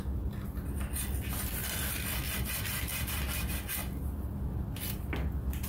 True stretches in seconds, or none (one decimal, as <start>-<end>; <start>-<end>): 0.0-1.6; 5.0-5.7

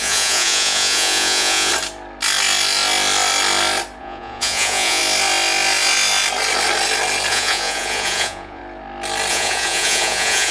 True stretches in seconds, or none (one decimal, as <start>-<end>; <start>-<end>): 1.7-4.0; 5.0-7.3; 8.6-9.3

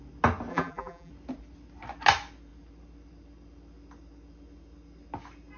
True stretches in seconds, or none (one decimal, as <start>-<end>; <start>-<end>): 0.0-0.5; 1.1-5.6

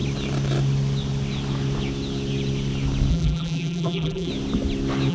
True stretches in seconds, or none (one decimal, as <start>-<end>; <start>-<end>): 0.0-3.1; 4.3-5.1

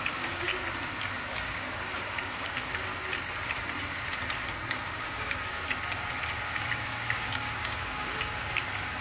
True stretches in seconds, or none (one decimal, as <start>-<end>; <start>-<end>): 0.5-1.3; 2.9-4.7; 5.6-6.4

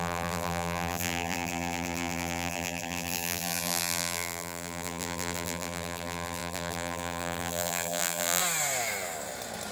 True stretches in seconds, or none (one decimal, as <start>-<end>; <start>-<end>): 8.4-9.7

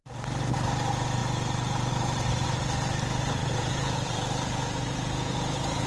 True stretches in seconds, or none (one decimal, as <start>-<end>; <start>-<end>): 0.0-3.4

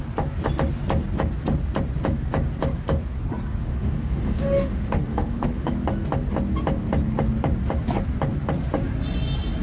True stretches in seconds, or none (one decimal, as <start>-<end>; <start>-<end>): 0.0-3.7; 5.7-9.6